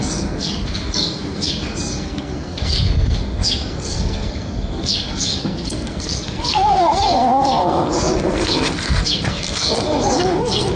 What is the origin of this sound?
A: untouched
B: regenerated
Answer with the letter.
B